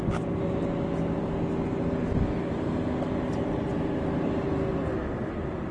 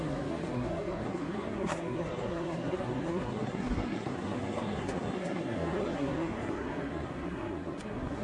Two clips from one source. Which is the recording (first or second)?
first